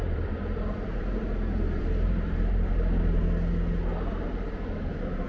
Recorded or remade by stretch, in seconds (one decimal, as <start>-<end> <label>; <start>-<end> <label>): 0.0-2.7 remade; 2.7-5.3 recorded